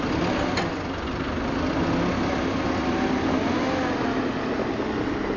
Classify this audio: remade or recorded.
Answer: recorded